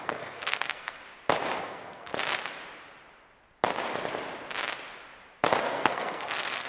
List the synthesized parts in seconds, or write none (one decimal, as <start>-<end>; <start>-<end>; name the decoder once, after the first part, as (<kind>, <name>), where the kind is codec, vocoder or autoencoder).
0.0-1.0 (codec, SNAC); 1.6-2.1; 5.6-6.7